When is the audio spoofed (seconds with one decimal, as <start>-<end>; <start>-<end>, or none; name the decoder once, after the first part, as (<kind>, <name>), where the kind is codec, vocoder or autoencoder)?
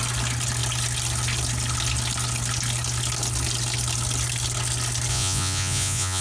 5.1-6.2 (vocoder, Vocos)